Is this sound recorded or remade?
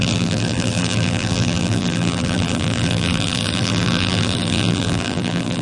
remade